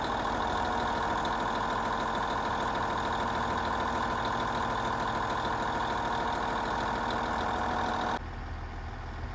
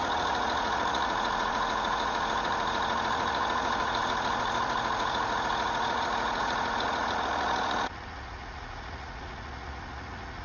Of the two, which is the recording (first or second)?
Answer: first